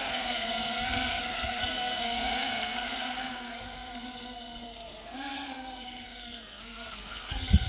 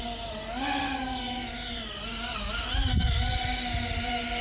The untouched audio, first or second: second